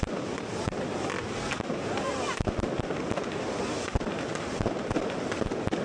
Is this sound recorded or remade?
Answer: recorded